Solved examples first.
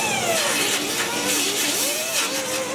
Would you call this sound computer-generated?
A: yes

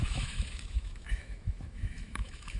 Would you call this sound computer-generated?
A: yes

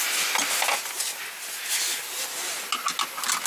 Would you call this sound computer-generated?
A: no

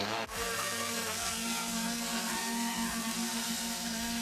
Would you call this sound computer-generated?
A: yes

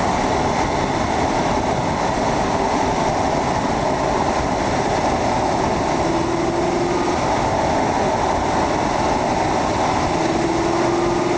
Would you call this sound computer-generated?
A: no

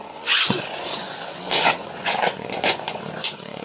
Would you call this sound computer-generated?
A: yes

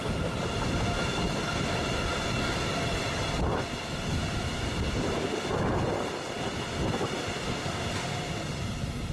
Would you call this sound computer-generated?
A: no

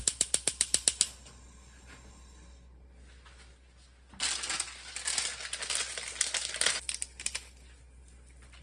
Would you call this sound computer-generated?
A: no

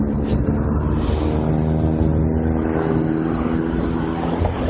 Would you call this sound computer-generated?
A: no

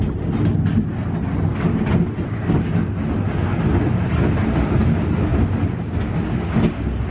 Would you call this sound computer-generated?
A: no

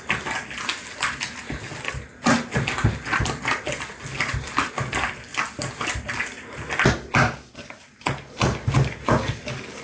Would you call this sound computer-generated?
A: no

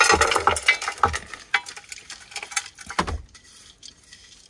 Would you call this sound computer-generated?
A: no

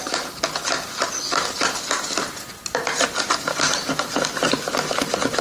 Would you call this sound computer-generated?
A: no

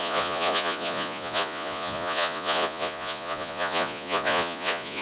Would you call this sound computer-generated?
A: yes